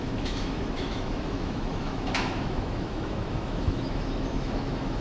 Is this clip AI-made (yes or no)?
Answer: yes